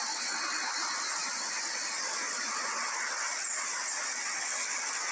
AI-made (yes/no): no